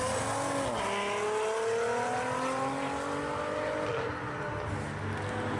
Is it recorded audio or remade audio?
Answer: recorded